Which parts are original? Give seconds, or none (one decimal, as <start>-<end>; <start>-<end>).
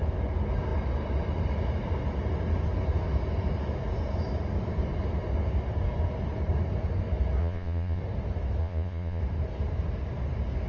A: 0.0-7.4; 8.0-8.6; 9.2-10.7